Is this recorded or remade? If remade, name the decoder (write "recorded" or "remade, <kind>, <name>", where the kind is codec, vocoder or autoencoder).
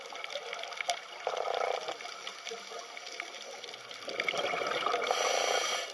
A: remade, vocoder, BigVGAN v2